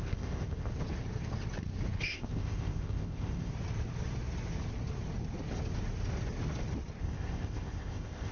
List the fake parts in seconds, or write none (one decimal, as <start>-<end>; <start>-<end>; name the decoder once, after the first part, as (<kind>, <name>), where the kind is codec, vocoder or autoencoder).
0.0-0.7 (codec, ZipCodec); 2.0-3.5; 7.0-8.3